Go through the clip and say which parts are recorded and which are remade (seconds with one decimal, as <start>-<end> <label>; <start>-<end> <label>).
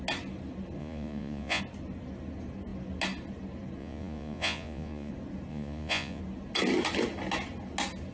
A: 0.0-0.8 recorded; 0.8-1.6 remade; 1.6-3.8 recorded; 3.8-5.1 remade; 5.1-5.5 recorded; 5.5-6.2 remade; 6.2-8.1 recorded